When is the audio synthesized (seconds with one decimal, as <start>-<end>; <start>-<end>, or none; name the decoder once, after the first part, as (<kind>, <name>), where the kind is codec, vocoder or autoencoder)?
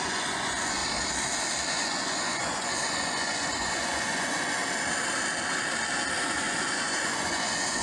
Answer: 0.0-0.8 (vocoder, Vocos); 1.7-4.6; 6.2-7.8